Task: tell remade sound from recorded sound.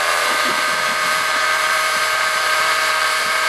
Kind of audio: remade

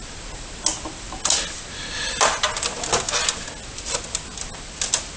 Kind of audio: recorded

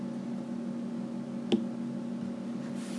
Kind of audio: recorded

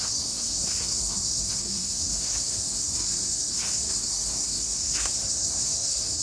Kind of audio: remade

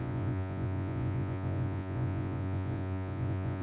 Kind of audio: remade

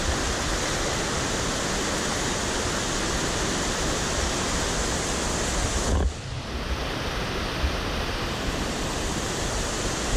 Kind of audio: recorded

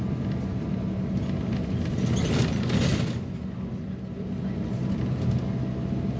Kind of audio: recorded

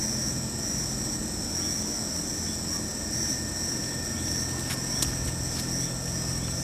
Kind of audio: recorded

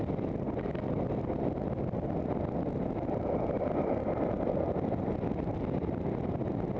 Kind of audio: recorded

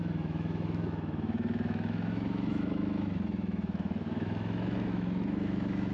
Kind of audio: remade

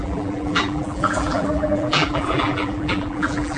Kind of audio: remade